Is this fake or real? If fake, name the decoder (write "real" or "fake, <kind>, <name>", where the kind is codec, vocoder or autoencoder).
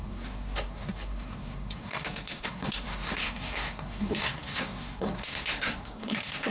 fake, codec, SNAC